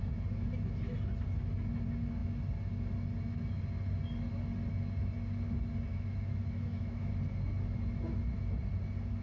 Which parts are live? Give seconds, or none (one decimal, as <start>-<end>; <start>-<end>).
0.0-5.9; 7.1-9.2